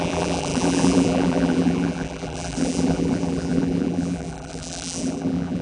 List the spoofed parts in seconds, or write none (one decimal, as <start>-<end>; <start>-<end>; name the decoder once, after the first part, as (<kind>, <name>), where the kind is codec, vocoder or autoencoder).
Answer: 0.0-5.6 (vocoder, BigVGAN v2)